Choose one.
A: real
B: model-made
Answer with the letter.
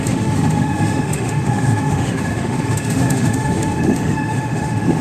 B